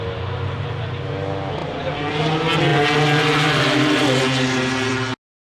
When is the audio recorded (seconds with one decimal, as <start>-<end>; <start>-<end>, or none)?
0.0-5.6

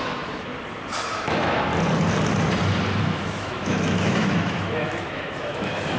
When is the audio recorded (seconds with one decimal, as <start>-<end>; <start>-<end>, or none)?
0.5-1.0; 1.7-3.0